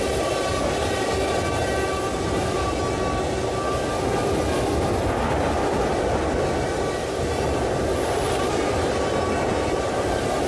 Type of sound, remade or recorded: recorded